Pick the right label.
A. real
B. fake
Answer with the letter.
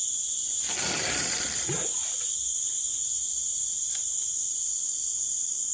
B